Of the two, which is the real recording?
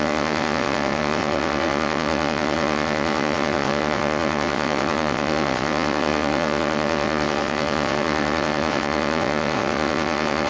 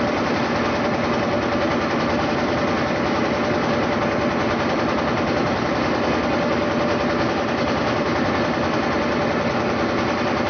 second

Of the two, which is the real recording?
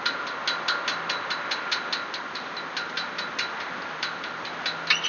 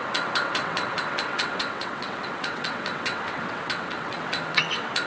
first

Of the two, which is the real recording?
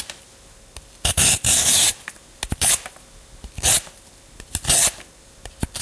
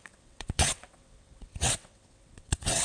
first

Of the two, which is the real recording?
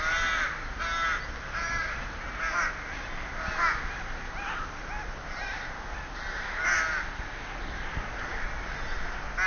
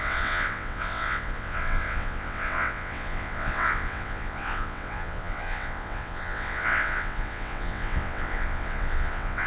first